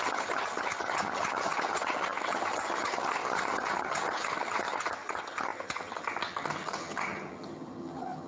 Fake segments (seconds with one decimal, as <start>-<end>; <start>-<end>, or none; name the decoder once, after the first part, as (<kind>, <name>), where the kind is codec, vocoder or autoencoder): 0.0-8.3 (vocoder, HiFi-GAN)